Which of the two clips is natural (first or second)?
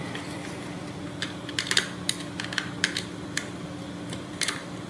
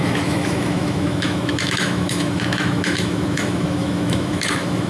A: first